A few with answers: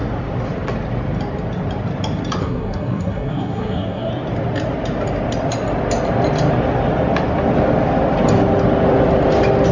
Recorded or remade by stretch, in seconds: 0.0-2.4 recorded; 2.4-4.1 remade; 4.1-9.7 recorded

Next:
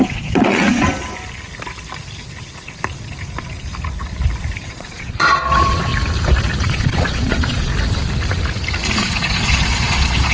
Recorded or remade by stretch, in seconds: 0.0-0.9 remade; 0.9-4.6 recorded; 4.6-5.9 remade; 5.9-6.6 recorded; 6.6-7.7 remade; 7.7-9.0 recorded; 9.0-10.3 remade